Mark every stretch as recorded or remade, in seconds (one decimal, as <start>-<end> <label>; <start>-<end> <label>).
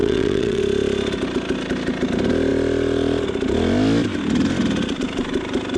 0.0-0.6 remade; 0.6-5.8 recorded